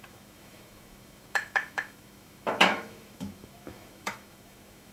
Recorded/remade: remade